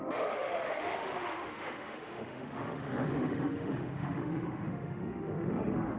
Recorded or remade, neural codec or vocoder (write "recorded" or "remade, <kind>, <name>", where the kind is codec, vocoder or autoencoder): remade, autoencoder, DAC-VAE